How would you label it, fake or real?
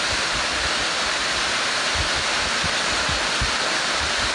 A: real